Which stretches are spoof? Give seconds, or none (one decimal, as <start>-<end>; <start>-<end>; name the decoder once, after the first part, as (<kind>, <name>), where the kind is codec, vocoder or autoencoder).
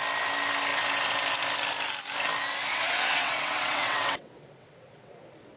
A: 2.7-5.1 (vocoder, WaveNeXt)